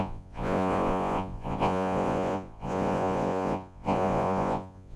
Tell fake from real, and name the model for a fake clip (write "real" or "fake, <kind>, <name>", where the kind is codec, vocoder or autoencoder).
fake, vocoder, Vocos